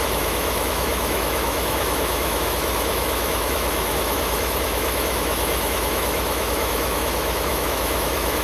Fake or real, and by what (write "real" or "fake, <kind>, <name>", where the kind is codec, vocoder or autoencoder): fake, autoencoder, DAC-VAE